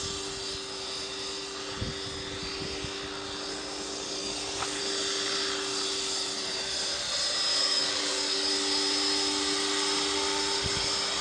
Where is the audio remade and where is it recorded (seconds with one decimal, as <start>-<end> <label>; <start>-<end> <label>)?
0.0-4.2 recorded; 4.2-4.8 remade; 4.8-7.6 recorded; 7.6-8.5 remade; 8.5-11.2 recorded